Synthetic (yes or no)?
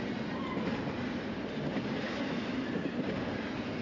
no